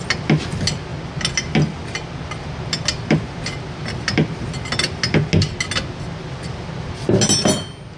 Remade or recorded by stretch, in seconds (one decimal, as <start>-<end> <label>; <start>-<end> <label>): 0.0-8.0 recorded

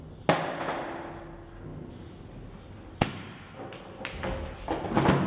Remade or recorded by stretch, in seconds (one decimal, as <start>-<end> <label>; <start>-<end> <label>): 0.0-5.3 recorded

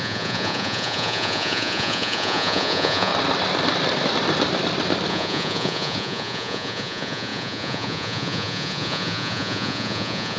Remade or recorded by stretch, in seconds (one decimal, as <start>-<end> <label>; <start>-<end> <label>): 0.0-3.1 remade; 3.1-5.1 recorded; 5.1-10.4 remade

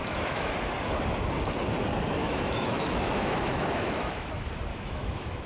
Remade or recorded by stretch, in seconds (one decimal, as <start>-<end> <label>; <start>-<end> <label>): 0.0-0.5 remade; 0.5-2.2 recorded; 2.2-4.3 remade; 4.3-4.7 recorded; 4.7-5.5 remade

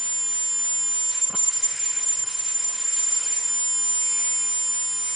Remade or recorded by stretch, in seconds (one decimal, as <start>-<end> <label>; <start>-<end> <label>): 0.0-1.1 recorded; 1.1-3.5 remade; 3.5-5.2 recorded

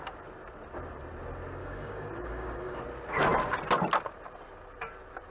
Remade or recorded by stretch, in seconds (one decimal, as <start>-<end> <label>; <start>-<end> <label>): 0.0-1.6 recorded; 1.6-2.8 remade; 2.8-5.3 recorded

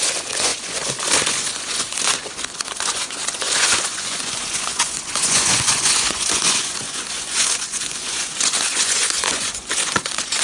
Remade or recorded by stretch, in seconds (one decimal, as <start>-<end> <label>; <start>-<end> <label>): 0.0-10.4 remade